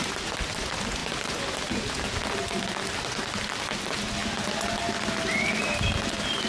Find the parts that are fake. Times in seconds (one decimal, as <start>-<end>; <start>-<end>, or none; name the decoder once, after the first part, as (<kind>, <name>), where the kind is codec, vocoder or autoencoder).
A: none